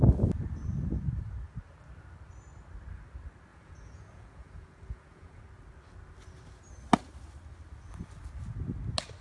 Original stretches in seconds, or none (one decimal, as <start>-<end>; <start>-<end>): 0.0-3.5; 5.4-9.2